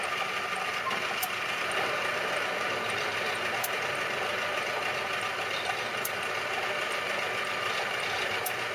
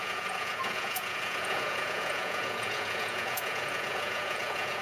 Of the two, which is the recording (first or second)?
first